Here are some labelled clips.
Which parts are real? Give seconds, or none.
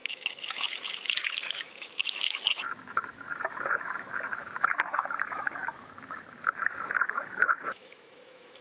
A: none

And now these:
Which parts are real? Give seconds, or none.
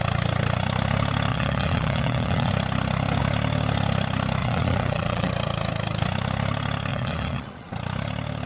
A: 0.0-1.3; 2.5-4.4; 5.3-6.9; 7.7-8.5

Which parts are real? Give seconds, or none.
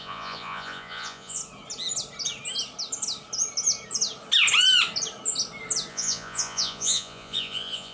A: 1.4-5.9